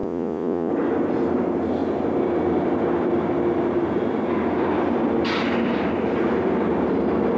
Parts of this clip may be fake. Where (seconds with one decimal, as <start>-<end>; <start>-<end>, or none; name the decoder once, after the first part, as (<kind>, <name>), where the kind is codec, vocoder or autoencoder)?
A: 0.0-0.7 (vocoder, Vocos)